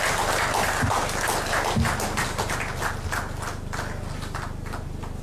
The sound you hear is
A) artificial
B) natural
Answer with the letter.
B